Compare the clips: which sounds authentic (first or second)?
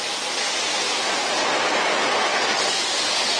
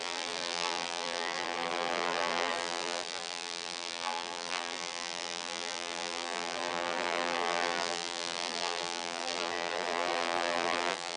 first